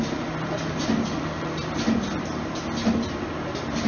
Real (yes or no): yes